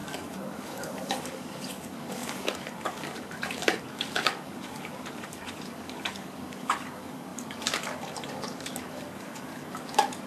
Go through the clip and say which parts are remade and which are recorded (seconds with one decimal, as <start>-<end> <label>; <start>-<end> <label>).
0.0-10.3 remade